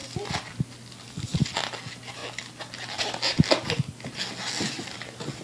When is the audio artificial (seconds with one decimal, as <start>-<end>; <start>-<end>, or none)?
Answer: none